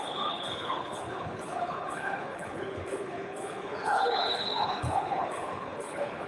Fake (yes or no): yes